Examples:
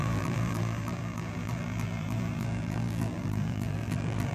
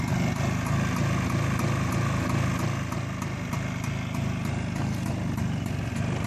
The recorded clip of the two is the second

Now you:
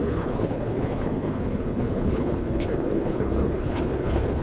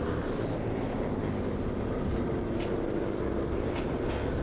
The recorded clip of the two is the second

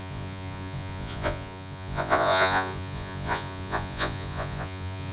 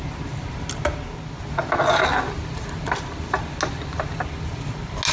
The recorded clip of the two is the second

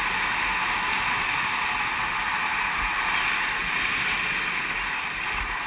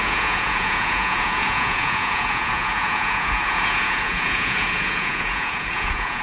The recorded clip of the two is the first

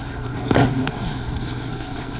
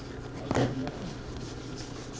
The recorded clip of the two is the second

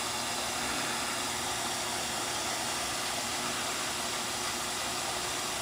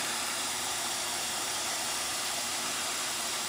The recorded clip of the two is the first